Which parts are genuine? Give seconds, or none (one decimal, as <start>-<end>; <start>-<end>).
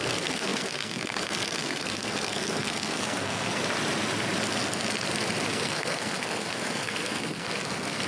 3.6-5.5